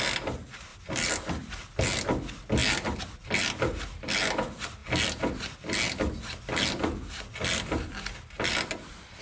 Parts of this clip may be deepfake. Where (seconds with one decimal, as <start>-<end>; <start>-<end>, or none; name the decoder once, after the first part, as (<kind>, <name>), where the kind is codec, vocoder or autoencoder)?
none